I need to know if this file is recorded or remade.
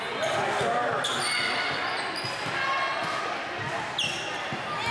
recorded